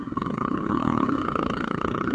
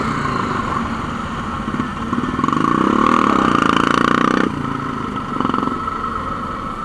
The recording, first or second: second